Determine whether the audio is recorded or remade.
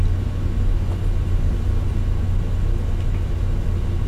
recorded